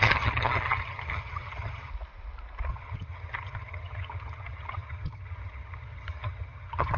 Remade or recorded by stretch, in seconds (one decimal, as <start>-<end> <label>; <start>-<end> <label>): 0.0-1.9 remade; 1.9-2.7 recorded; 2.7-7.0 remade